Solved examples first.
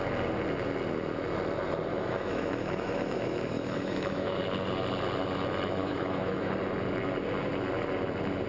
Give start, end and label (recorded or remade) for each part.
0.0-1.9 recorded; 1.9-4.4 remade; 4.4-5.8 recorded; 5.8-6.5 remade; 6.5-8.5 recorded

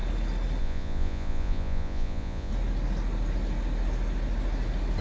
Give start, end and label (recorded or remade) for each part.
0.0-0.6 recorded; 0.6-2.5 remade; 2.5-5.0 recorded